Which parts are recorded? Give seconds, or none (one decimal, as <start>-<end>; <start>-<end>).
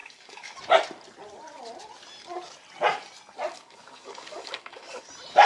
0.6-3.5; 5.1-5.5